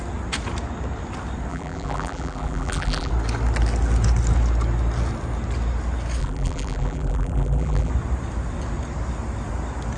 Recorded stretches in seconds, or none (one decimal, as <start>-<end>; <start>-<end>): 0.0-1.5; 3.1-6.2; 7.9-10.0